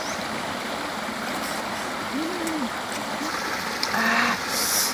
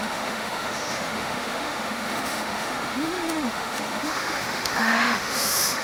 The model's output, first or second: second